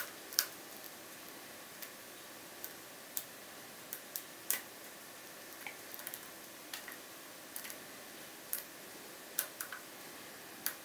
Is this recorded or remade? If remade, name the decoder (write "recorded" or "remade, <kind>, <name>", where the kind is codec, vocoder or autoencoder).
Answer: remade, vocoder, BigVGAN v2